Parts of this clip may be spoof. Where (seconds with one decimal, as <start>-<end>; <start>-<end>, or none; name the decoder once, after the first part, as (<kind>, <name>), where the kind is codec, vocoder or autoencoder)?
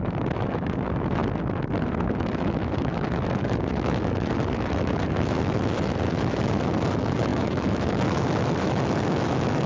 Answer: 0.0-1.2 (autoencoder, DAC-VAE); 1.9-9.7